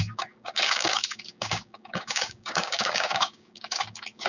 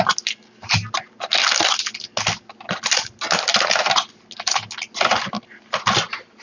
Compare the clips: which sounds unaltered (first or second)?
second